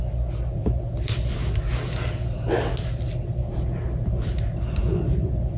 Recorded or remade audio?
recorded